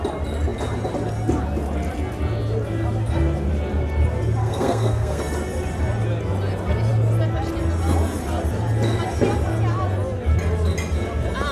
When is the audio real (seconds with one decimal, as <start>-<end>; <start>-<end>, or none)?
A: 0.0-4.4; 5.2-11.5